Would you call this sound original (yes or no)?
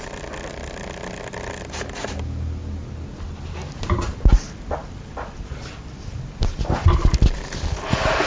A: yes